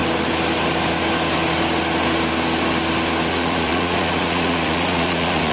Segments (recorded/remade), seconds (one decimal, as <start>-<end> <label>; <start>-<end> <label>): 0.0-3.3 recorded; 3.3-5.5 remade